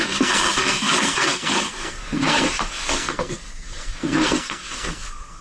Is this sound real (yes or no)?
no